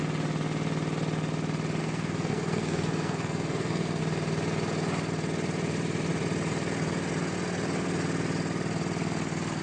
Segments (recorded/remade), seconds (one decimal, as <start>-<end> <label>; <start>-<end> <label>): 0.0-1.8 recorded; 1.8-4.0 remade; 4.0-9.6 recorded